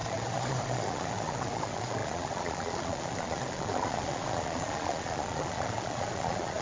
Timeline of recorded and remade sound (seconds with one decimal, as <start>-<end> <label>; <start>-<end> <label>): 0.0-6.6 remade